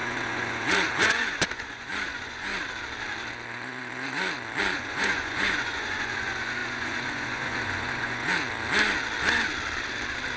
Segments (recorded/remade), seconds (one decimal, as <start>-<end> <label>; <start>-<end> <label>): 0.0-2.5 remade; 2.5-4.6 recorded; 4.6-8.3 remade; 8.3-10.4 recorded